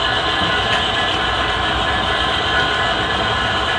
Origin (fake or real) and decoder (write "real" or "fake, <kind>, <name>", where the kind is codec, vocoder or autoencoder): real